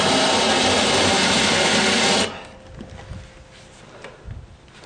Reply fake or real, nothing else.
real